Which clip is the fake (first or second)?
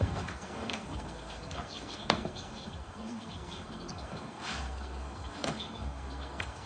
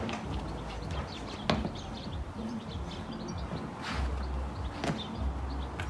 first